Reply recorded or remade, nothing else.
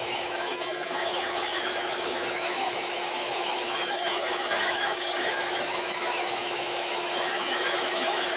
remade